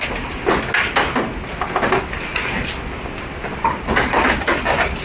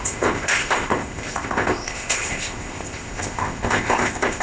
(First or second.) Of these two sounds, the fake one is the second